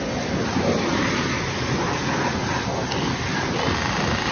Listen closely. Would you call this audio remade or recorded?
recorded